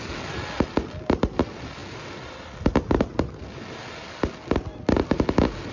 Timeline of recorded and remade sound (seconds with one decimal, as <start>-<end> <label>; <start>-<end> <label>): 0.0-5.7 recorded